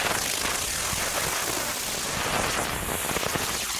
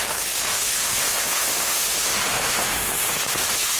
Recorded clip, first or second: first